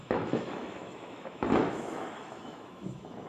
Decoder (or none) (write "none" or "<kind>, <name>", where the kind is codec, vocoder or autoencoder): autoencoder, DAC-VAE